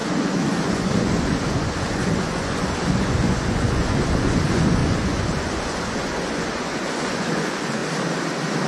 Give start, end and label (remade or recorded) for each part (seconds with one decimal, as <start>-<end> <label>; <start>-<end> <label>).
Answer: 0.0-7.8 remade; 7.8-8.7 recorded